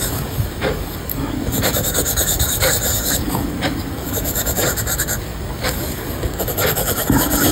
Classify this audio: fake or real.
fake